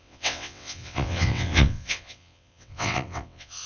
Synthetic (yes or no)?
yes